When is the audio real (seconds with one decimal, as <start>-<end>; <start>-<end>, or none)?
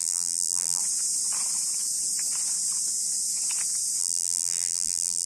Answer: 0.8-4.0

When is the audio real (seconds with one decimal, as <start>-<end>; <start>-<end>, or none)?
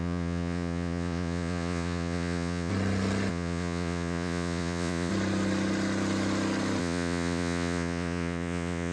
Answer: 2.7-3.3; 5.1-6.8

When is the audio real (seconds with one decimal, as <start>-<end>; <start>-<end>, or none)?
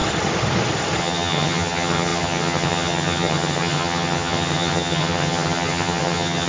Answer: 0.0-1.0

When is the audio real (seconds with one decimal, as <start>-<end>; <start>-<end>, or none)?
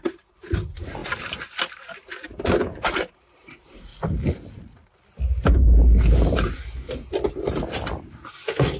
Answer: 1.0-1.7; 3.9-8.0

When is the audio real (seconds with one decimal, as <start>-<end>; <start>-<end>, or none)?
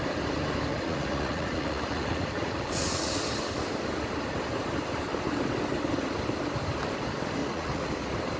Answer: 0.0-0.7; 3.2-7.4; 7.9-8.4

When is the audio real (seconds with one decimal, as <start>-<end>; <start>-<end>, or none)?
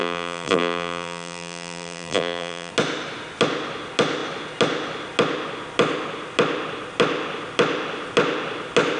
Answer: 2.7-9.0